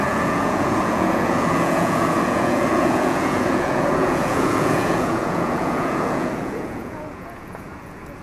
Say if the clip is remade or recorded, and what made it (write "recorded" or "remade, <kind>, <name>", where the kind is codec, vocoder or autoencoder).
remade, vocoder, Vocos